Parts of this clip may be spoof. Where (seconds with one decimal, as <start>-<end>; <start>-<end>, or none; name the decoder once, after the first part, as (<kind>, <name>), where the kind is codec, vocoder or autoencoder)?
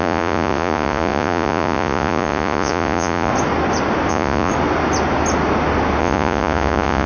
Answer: 0.0-3.3 (vocoder, Vocos); 4.1-4.5; 6.0-7.1